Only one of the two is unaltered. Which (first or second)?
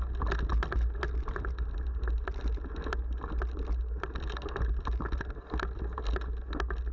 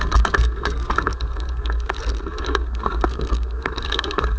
first